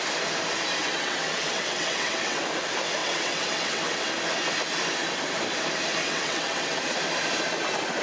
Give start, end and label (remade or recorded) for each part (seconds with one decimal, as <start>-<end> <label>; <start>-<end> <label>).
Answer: 0.0-0.8 recorded; 0.8-2.4 remade; 2.4-3.0 recorded; 3.0-4.1 remade; 4.1-6.0 recorded; 6.0-6.8 remade; 6.8-8.0 recorded

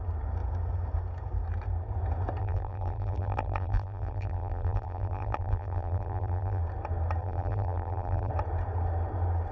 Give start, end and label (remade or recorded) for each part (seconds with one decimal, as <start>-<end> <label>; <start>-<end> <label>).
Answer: 0.0-2.4 recorded; 2.4-6.6 remade; 6.6-7.2 recorded; 7.2-8.3 remade; 8.3-9.5 recorded

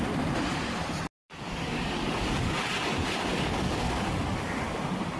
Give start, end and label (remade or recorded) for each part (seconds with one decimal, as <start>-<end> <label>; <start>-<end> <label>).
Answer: 0.0-1.2 recorded; 1.2-2.7 remade; 2.7-3.3 recorded; 3.3-4.8 remade; 4.8-5.2 recorded

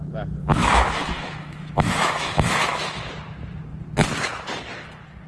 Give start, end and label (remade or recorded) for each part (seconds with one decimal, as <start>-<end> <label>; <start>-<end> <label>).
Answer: 0.0-0.4 recorded; 0.4-3.1 remade; 3.1-5.3 recorded